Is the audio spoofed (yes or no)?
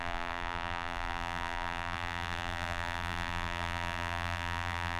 yes